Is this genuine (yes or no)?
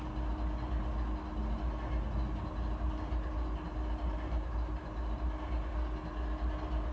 yes